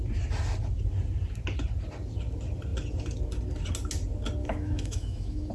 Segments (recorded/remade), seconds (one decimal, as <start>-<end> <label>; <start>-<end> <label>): 0.0-4.4 recorded; 4.4-5.5 remade